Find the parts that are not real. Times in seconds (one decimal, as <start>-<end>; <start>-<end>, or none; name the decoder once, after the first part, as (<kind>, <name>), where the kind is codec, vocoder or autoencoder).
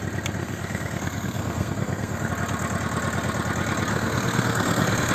0.4-2.3 (codec, SNAC); 3.9-5.1